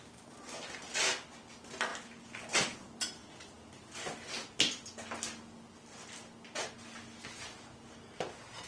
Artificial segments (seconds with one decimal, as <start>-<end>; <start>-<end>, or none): none